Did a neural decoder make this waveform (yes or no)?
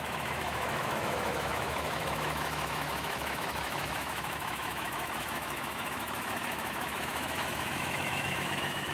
yes